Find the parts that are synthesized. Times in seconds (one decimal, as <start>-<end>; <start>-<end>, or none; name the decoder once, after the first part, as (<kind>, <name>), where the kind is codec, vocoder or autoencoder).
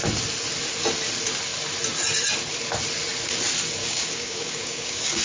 3.8-5.2 (codec, DAC)